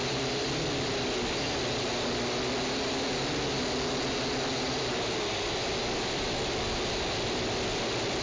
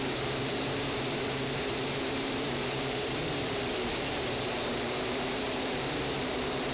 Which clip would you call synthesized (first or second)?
second